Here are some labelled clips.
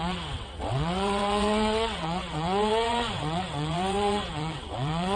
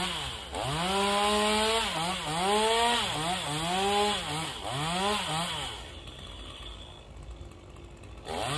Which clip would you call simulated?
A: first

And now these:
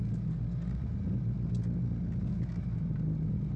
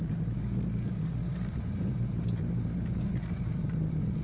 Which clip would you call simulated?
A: second